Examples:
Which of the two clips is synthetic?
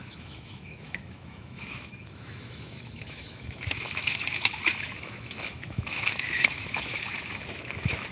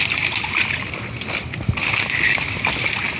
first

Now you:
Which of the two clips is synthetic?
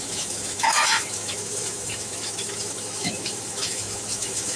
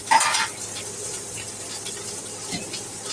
first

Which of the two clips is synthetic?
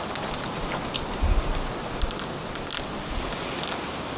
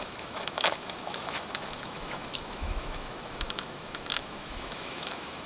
second